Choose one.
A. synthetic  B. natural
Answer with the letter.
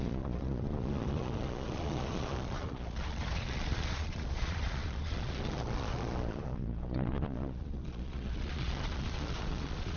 A